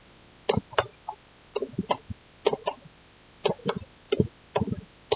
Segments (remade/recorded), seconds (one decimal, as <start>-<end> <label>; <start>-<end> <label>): 0.0-5.2 recorded